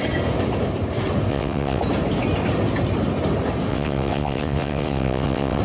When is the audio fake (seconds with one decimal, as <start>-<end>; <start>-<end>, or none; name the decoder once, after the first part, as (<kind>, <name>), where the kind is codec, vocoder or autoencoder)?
1.3-1.8 (vocoder, WaveNeXt); 3.7-5.6